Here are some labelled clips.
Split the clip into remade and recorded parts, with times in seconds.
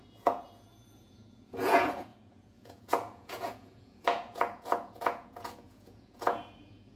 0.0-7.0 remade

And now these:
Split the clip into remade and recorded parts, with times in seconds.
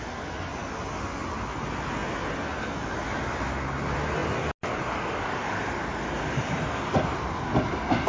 0.0-8.1 recorded